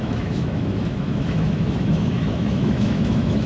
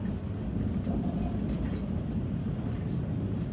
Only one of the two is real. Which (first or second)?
second